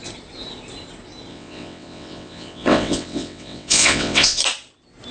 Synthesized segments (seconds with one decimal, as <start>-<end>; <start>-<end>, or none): 1.3-4.4